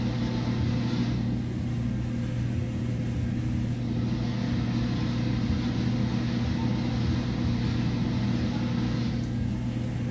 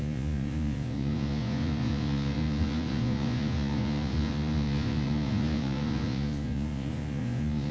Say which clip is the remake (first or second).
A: second